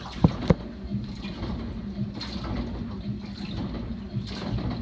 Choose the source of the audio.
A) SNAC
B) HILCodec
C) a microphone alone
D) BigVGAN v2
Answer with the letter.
C